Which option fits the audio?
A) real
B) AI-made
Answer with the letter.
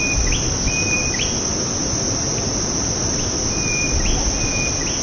A